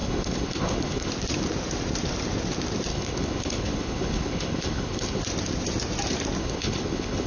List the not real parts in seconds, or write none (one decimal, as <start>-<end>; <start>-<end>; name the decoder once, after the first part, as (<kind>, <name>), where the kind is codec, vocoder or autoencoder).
0.0-1.1 (codec, HILCodec); 2.9-5.2; 6.4-7.3